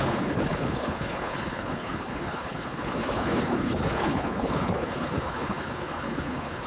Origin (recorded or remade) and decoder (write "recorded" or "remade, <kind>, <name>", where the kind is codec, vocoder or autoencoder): remade, codec, HILCodec